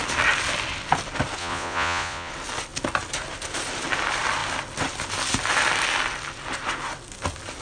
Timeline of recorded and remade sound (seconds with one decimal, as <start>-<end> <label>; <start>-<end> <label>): 0.0-1.4 recorded; 1.4-2.3 remade; 2.3-7.6 recorded